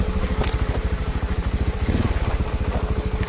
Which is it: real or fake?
real